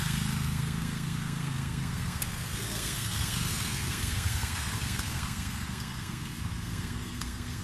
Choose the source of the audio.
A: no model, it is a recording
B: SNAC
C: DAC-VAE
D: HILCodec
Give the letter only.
B